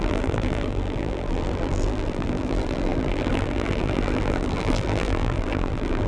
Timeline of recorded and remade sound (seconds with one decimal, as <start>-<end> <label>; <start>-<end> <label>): 0.0-6.1 remade